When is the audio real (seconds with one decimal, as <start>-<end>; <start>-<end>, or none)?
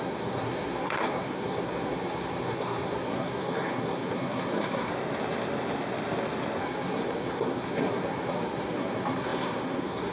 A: 4.9-6.6